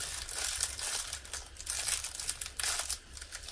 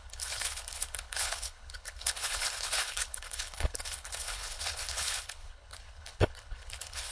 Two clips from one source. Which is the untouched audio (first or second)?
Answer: first